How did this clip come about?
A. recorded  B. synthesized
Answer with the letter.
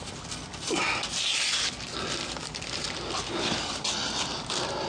A